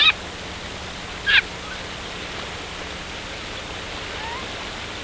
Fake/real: real